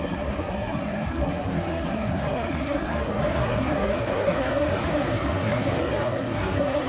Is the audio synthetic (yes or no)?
yes